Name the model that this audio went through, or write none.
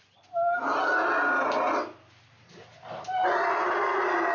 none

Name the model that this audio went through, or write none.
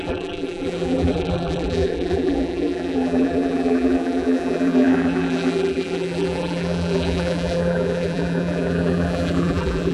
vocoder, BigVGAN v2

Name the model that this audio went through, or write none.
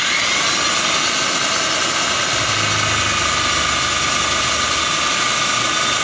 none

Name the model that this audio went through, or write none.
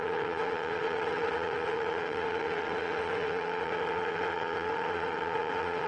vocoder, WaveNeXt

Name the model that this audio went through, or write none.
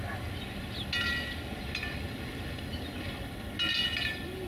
none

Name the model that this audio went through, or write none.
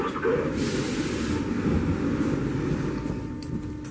none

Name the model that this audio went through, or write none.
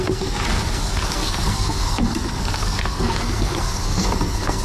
codec, SNAC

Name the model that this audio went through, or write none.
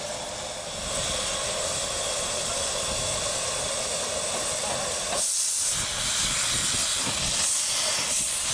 none